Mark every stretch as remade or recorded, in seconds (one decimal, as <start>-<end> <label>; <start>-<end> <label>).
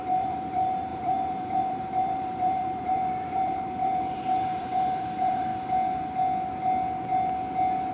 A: 0.0-5.5 remade; 5.5-7.9 recorded